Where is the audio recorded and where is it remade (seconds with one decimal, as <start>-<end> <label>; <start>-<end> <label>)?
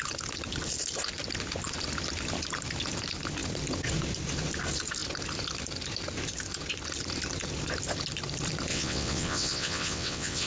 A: 0.0-8.7 recorded; 8.7-10.5 remade